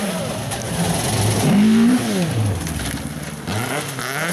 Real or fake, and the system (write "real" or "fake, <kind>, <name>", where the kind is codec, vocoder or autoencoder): real